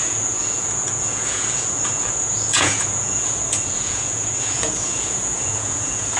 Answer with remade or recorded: remade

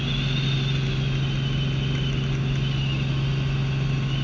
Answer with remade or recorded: recorded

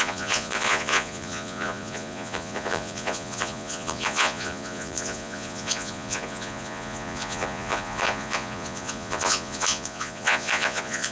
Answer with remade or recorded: remade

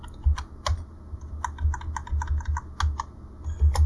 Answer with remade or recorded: recorded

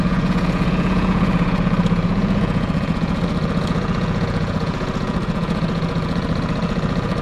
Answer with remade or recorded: remade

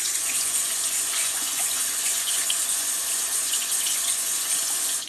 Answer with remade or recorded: remade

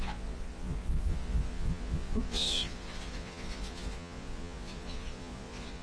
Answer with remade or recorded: remade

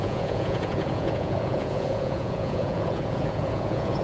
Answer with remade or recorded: remade